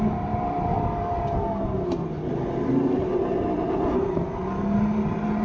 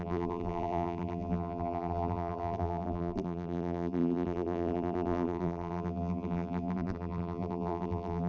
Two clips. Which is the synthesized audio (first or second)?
second